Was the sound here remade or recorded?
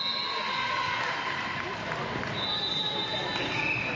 recorded